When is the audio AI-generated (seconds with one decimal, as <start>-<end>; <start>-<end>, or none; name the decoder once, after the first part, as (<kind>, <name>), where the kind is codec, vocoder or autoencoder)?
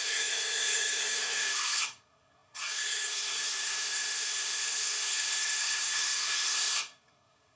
0.0-7.6 (codec, SNAC)